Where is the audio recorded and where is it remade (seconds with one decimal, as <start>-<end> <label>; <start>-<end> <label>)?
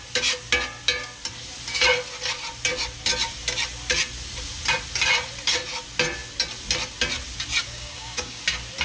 0.0-7.6 recorded; 7.6-8.4 remade; 8.4-8.8 recorded